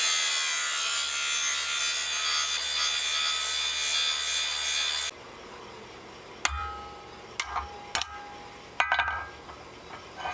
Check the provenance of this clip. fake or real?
real